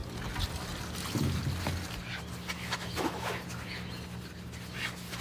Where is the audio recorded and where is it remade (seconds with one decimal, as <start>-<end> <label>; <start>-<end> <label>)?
0.0-5.2 recorded